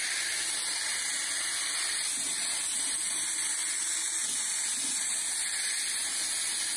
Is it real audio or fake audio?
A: real